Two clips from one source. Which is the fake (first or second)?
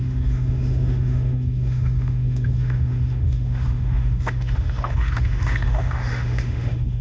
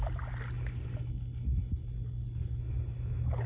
first